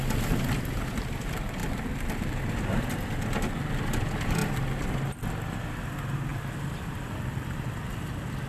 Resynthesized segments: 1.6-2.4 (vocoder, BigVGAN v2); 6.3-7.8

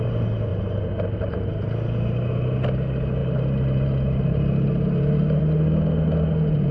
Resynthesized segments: 0.5-1.6 (vocoder, BigVGAN v2); 3.2-5.4

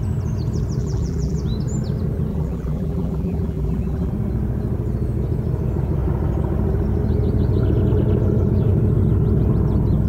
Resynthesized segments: 0.8-1.4 (vocoder, BigVGAN v2); 2.3-4.1

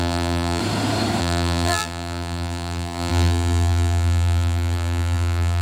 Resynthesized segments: 0.0-0.6 (vocoder, BigVGAN v2); 1.2-5.6

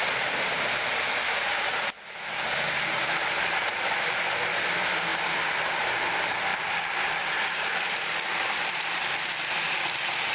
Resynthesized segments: 6.5-10.3 (vocoder, BigVGAN v2)

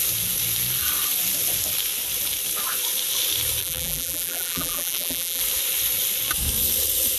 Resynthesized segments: 3.6-5.4 (vocoder, BigVGAN v2)